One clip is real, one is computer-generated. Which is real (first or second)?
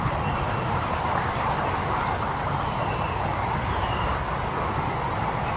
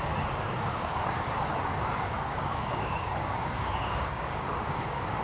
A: first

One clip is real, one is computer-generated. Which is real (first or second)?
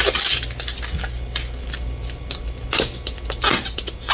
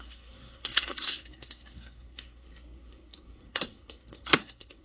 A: first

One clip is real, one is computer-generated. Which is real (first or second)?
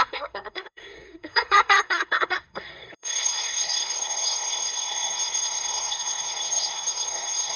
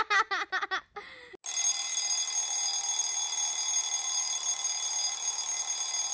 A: second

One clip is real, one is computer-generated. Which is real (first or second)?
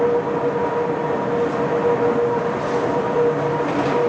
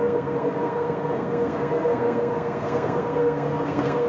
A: first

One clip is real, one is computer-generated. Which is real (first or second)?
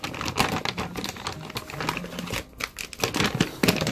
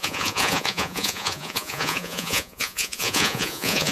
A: first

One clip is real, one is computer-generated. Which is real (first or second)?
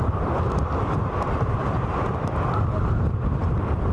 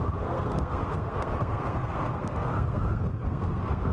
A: first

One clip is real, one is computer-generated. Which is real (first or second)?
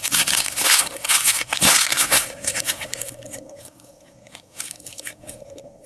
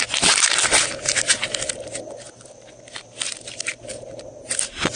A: second